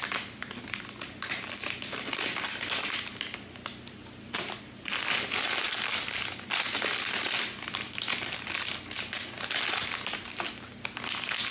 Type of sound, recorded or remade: recorded